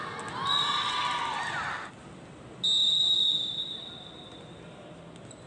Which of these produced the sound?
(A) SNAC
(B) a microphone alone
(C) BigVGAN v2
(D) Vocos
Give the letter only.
B